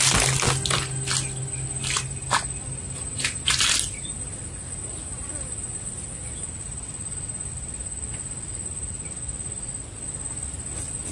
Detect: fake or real real